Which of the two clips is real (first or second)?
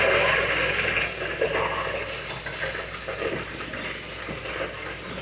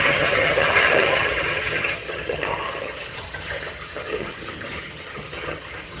first